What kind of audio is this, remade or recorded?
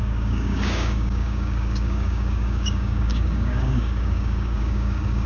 remade